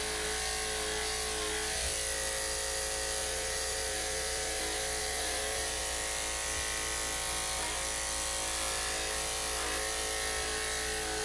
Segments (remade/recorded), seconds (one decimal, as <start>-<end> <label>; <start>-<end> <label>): 0.0-3.2 recorded; 3.2-4.6 remade; 4.6-5.0 recorded; 5.0-5.8 remade; 5.8-11.2 recorded